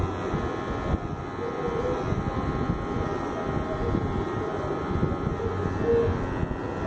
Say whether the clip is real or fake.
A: real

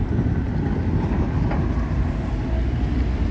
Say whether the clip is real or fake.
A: real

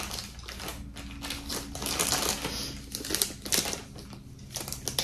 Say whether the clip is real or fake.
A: real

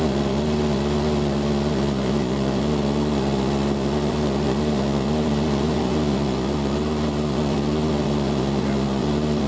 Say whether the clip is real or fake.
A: fake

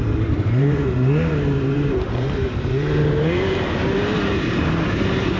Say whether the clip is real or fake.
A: fake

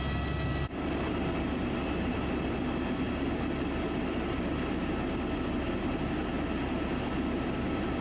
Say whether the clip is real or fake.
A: real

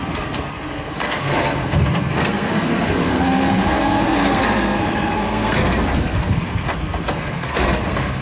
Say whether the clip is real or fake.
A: fake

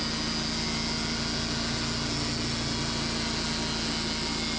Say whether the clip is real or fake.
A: real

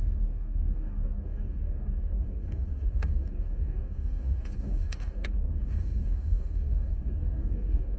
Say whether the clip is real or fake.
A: fake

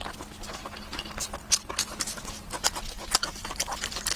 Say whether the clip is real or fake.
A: real